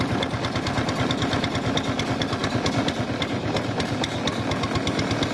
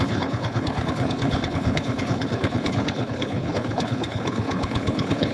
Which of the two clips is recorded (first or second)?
first